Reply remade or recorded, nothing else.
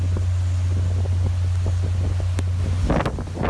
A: recorded